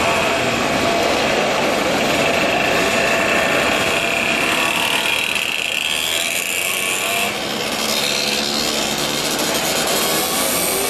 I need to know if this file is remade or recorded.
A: recorded